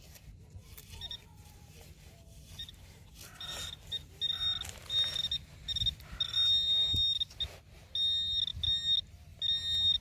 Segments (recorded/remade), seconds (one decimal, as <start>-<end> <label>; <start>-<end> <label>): 0.0-0.6 recorded; 0.6-3.1 remade; 3.1-10.0 recorded